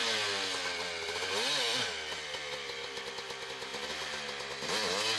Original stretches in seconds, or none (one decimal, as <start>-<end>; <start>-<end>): 0.0-5.2